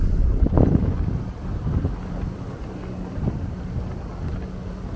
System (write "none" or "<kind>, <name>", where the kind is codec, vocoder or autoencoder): none